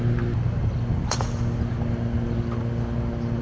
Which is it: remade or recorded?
recorded